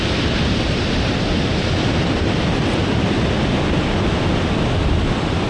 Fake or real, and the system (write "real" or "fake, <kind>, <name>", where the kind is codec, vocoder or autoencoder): real